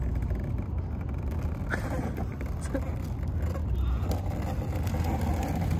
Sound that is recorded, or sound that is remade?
recorded